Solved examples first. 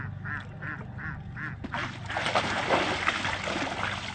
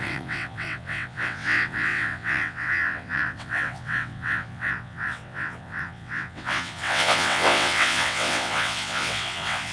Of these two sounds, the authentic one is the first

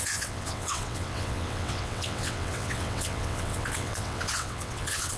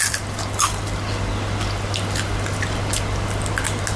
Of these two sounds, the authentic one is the second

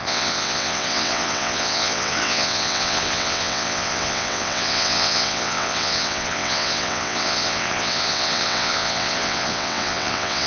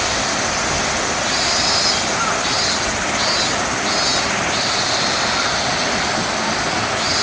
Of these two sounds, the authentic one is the second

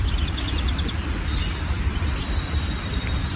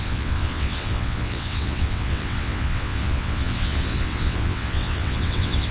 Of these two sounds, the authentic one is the first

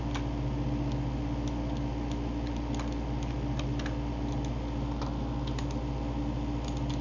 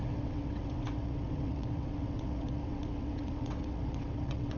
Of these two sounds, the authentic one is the first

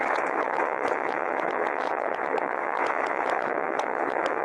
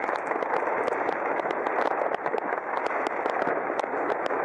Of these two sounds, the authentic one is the second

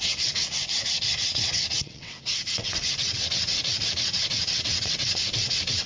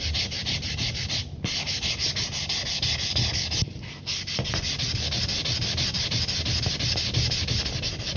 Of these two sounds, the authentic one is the second